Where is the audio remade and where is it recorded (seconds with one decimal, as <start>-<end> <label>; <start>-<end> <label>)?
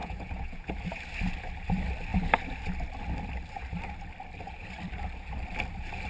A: 0.0-0.7 remade; 0.7-6.1 recorded